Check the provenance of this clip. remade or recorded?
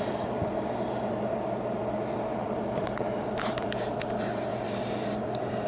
remade